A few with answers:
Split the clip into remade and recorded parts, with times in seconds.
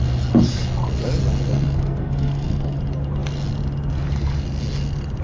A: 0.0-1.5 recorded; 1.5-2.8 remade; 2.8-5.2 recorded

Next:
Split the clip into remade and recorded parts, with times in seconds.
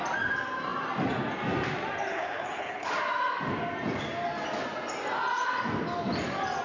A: 0.0-2.1 recorded; 2.1-2.9 remade; 2.9-6.6 recorded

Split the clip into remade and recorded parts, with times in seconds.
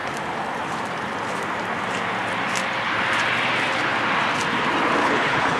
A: 0.0-5.0 recorded; 5.0-5.6 remade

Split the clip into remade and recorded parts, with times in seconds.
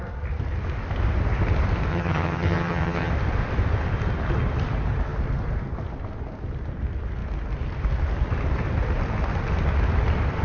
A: 0.0-1.9 recorded; 1.9-3.1 remade; 3.1-10.4 recorded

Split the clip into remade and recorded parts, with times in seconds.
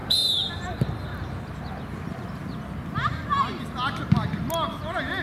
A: 0.0-0.5 remade; 0.5-5.2 recorded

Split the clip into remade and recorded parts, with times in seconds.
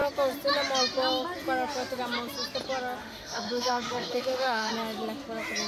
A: 0.0-3.0 recorded; 3.0-4.7 remade; 4.7-5.7 recorded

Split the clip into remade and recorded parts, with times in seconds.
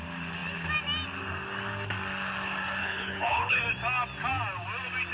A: 0.0-2.8 recorded; 2.8-3.6 remade; 3.6-5.1 recorded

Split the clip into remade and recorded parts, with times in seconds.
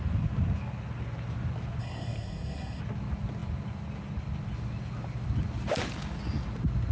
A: 0.0-1.8 recorded; 1.8-2.8 remade; 2.8-6.9 recorded